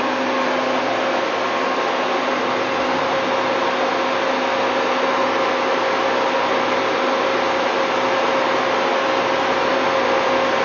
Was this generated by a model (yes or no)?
no